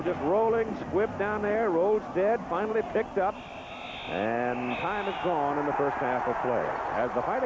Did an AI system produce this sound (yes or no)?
no